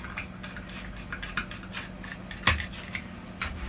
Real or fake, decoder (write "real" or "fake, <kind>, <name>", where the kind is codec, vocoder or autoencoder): real